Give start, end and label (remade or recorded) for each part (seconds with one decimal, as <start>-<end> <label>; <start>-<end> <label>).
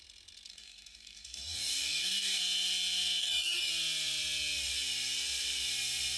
0.0-0.5 recorded; 0.5-2.4 remade; 2.4-3.2 recorded; 3.2-3.7 remade; 3.7-6.2 recorded